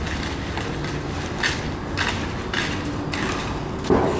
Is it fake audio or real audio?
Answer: real